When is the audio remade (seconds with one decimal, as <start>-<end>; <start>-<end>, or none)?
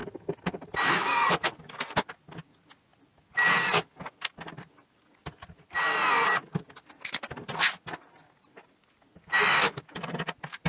none